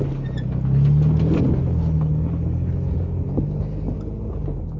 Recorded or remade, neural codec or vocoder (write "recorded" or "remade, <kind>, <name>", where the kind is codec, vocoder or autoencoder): recorded